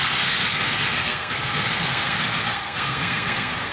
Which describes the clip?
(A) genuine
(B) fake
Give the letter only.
B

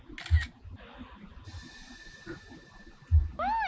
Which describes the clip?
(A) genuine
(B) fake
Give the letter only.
A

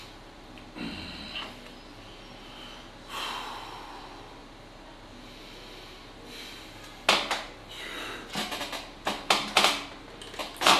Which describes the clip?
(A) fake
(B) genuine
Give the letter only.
B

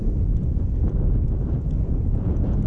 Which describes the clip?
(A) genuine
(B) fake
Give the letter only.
B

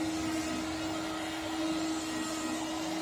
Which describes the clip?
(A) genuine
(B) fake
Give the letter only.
A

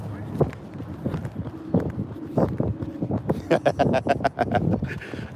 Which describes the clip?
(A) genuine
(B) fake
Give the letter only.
A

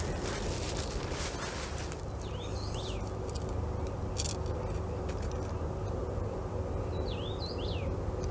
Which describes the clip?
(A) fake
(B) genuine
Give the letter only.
B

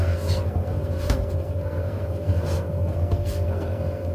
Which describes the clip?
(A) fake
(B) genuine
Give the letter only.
A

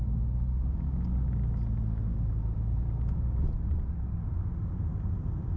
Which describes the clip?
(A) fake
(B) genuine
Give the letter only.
B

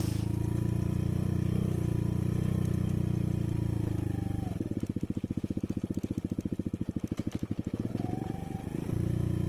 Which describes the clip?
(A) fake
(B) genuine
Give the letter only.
B